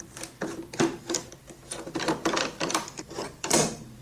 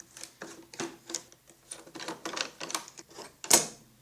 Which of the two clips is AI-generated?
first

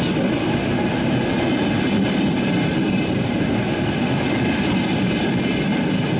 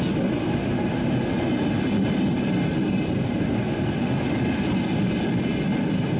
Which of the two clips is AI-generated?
first